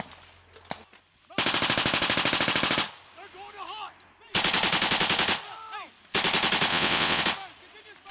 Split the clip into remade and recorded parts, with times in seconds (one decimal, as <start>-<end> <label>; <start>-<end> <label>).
0.0-6.7 recorded; 6.7-7.2 remade; 7.2-8.1 recorded